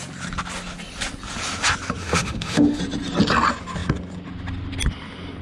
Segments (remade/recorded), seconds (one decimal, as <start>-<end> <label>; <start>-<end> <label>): 0.0-2.0 recorded; 2.0-2.8 remade; 2.8-5.4 recorded